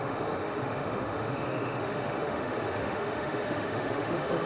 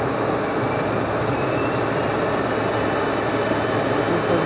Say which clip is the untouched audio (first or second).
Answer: second